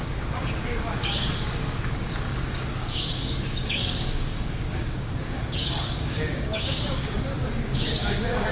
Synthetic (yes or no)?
yes